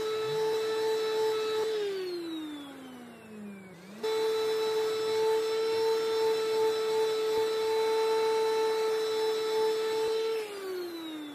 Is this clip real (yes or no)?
yes